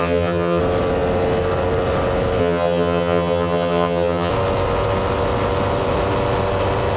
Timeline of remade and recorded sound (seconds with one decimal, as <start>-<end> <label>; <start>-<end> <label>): 0.0-0.6 remade; 0.6-2.4 recorded; 2.4-4.3 remade; 4.3-7.0 recorded

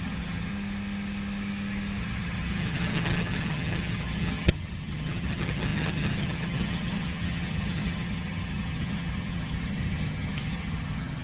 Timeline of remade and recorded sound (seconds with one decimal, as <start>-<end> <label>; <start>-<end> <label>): 0.0-0.5 remade; 0.5-2.0 recorded; 2.0-11.2 remade

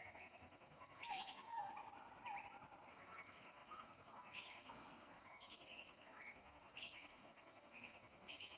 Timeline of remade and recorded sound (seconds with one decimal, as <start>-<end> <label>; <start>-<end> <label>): 0.0-1.7 remade; 1.7-2.9 recorded; 2.9-8.6 remade

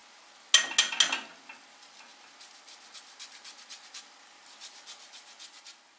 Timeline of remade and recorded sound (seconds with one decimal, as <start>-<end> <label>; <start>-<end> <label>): 0.0-6.0 recorded

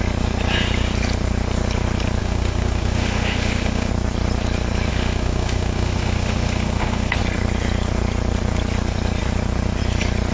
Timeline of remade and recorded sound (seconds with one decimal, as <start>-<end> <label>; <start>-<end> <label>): 0.0-2.2 recorded; 2.2-3.9 remade; 3.9-4.9 recorded; 4.9-7.2 remade; 7.2-10.3 recorded

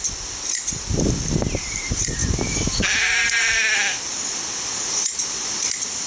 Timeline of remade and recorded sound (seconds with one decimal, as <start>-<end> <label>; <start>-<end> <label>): 0.0-6.1 recorded

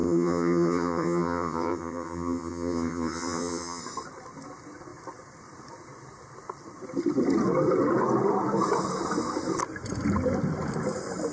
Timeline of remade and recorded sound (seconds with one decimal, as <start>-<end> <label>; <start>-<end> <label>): 0.0-3.8 remade; 3.8-11.3 recorded

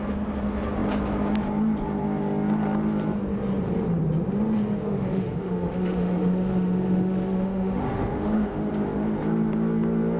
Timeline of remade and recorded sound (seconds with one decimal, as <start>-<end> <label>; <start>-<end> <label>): 0.0-4.8 recorded; 4.8-8.7 remade; 8.7-10.2 recorded